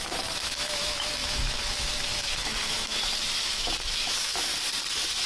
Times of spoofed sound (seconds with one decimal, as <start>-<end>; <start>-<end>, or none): 0.0-4.5